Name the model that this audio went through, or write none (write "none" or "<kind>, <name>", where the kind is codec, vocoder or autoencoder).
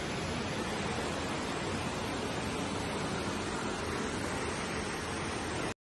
none